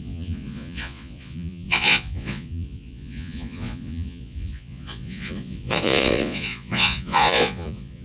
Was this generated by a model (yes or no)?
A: yes